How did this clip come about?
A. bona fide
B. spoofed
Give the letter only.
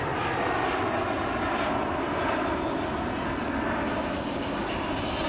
A